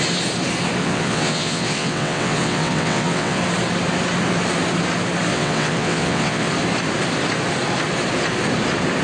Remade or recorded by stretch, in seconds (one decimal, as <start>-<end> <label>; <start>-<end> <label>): 0.0-0.8 recorded; 0.8-3.4 remade; 3.4-5.3 recorded; 5.3-6.5 remade; 6.5-9.0 recorded